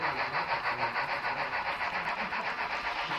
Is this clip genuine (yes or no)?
yes